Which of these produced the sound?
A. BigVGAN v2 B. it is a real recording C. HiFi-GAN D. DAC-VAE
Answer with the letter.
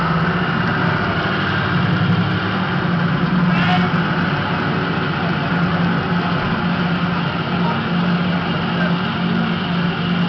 B